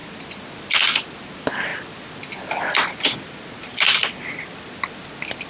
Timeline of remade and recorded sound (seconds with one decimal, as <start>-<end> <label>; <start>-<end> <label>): 0.0-5.5 recorded